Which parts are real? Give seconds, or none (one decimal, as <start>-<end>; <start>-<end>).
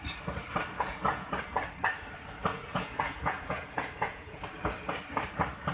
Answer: 0.0-0.7; 1.5-2.5; 4.4-5.7